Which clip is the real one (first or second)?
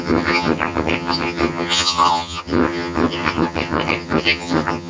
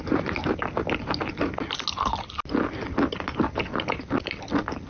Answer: second